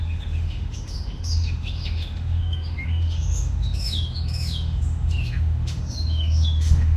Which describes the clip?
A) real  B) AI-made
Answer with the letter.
B